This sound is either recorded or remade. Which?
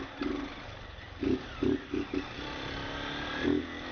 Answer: recorded